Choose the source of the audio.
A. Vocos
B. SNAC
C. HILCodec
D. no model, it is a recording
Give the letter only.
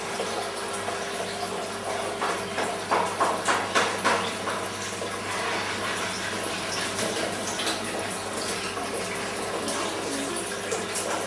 D